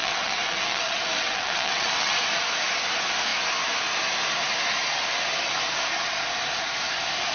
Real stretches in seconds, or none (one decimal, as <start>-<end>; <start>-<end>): 2.3-7.3